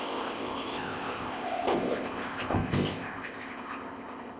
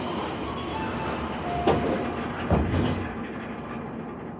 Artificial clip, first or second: first